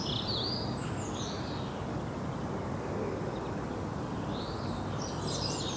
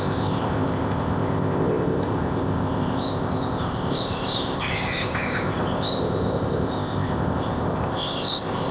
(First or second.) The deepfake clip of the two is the second